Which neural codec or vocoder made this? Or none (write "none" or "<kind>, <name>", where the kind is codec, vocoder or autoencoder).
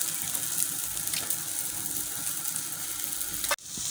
none